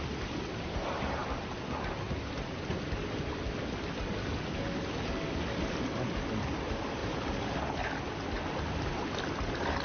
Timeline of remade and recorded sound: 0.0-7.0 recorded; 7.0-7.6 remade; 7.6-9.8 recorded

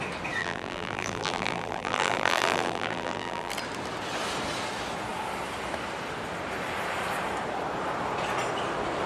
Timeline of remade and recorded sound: 0.0-0.4 recorded; 0.4-3.5 remade; 3.5-9.1 recorded